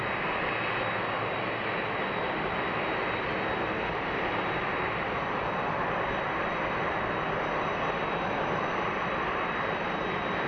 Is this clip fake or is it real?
real